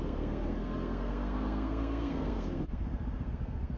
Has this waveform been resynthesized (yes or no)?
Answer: yes